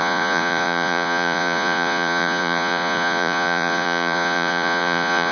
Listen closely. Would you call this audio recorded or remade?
remade